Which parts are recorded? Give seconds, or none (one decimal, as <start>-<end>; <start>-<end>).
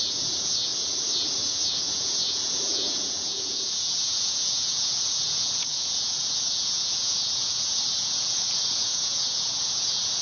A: 0.7-1.5